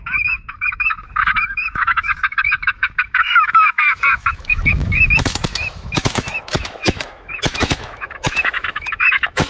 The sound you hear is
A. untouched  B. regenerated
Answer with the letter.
B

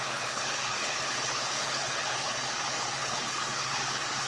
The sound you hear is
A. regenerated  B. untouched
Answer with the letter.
A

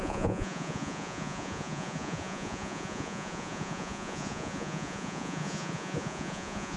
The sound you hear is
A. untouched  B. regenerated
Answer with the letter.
B